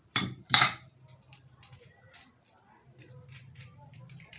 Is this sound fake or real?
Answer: fake